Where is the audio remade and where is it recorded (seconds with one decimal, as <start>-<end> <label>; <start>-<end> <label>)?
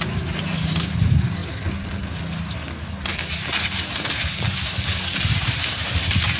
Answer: 0.0-1.4 remade; 1.4-5.2 recorded; 5.2-6.4 remade